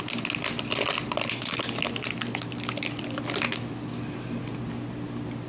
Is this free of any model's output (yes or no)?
yes